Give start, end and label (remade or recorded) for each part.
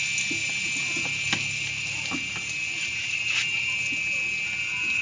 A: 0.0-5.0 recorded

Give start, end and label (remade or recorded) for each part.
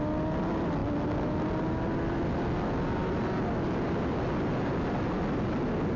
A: 0.0-6.0 recorded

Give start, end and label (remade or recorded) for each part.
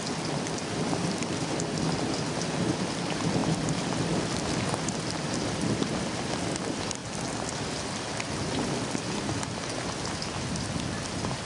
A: 0.0-11.5 recorded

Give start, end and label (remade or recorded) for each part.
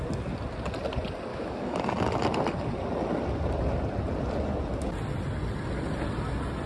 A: 0.0-1.3 recorded; 1.3-1.9 remade; 1.9-6.7 recorded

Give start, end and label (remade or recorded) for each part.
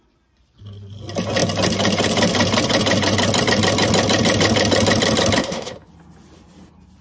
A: 0.0-5.4 recorded; 5.4-5.9 remade; 5.9-7.0 recorded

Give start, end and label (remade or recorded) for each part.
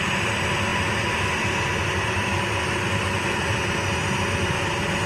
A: 0.0-5.1 recorded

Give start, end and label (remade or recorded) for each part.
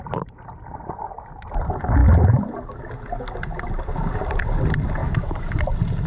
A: 0.0-5.0 recorded; 5.0-5.6 remade; 5.6-6.1 recorded